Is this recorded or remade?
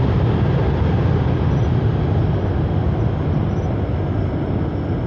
recorded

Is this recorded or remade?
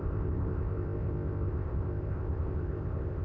remade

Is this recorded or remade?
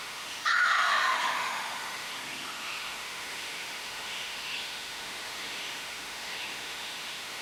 remade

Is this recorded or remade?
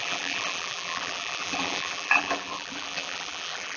remade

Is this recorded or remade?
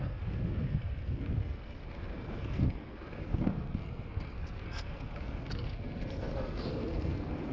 remade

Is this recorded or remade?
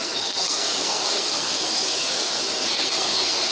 remade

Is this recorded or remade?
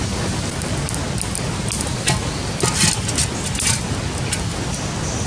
recorded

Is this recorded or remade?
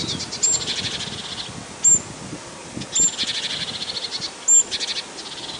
recorded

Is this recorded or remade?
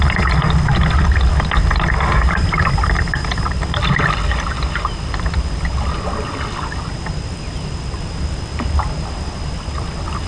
recorded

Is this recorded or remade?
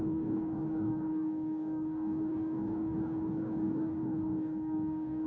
remade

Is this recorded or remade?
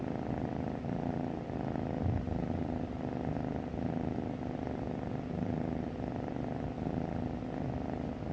recorded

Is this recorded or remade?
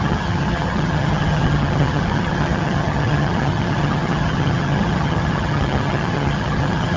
remade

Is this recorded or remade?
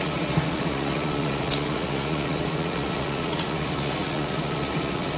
remade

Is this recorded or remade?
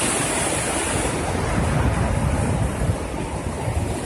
recorded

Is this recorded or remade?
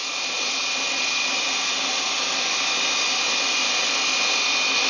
recorded